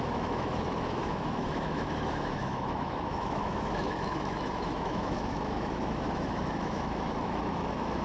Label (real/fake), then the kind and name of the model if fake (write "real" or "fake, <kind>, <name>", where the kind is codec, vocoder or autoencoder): fake, autoencoder, DAC-VAE